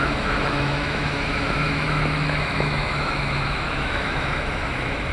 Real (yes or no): no